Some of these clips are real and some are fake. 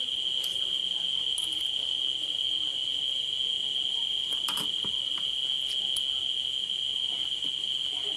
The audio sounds real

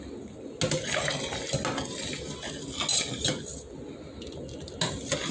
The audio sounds real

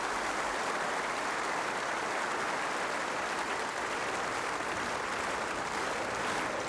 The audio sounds real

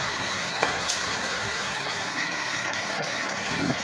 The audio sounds fake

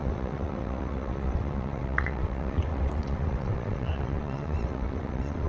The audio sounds fake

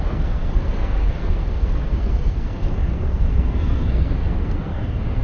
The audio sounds fake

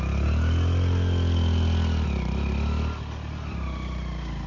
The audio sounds real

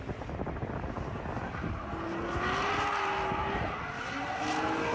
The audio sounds real